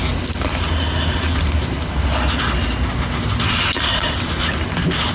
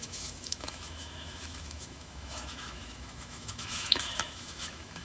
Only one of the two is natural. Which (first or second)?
first